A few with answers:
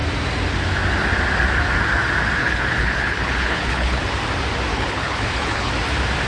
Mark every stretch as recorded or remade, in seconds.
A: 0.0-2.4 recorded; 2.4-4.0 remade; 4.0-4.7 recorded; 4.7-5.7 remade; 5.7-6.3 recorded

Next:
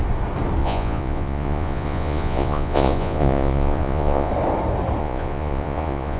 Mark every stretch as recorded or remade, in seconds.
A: 0.0-0.6 recorded; 0.6-4.3 remade; 4.3-5.0 recorded; 5.0-6.2 remade

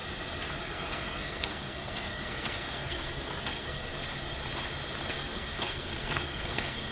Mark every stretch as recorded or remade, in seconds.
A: 0.0-0.6 recorded; 0.6-3.9 remade; 3.9-5.1 recorded; 5.1-6.9 remade

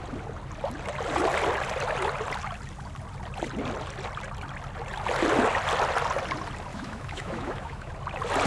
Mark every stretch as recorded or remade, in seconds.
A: 0.0-6.7 recorded; 6.7-7.9 remade; 7.9-8.5 recorded

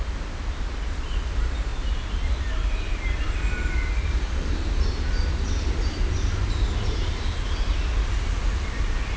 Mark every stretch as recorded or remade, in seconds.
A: 0.0-9.2 recorded

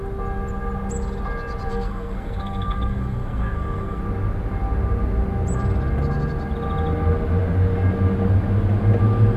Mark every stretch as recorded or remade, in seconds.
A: 0.0-1.7 recorded; 1.7-4.0 remade; 4.0-9.4 recorded